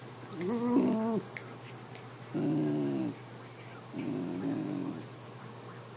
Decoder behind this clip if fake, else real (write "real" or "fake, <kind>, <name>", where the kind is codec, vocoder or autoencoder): real